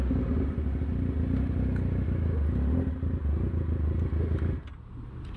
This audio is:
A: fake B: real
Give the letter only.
B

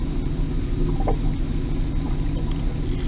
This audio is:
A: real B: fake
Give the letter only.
A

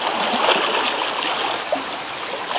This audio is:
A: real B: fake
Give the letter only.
A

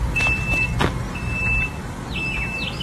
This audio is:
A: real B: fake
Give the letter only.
A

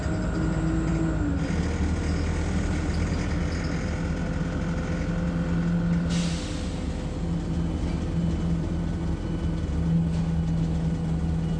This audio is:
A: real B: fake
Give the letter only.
A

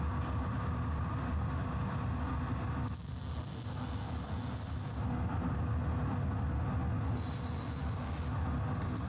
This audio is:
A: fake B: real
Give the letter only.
B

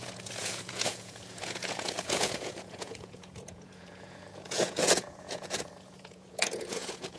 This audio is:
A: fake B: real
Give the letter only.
A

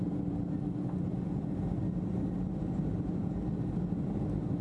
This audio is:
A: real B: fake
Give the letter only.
A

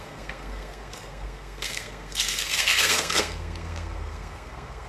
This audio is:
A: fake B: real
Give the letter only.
A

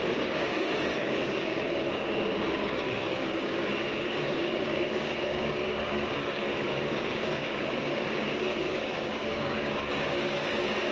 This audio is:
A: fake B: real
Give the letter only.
A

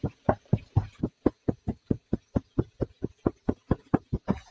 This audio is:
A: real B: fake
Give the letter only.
A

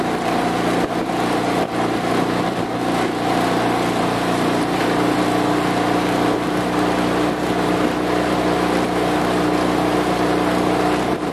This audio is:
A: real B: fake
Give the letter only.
A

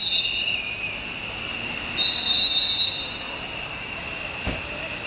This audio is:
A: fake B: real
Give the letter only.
B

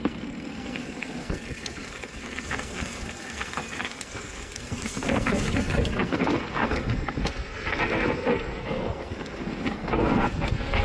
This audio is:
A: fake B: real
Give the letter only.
A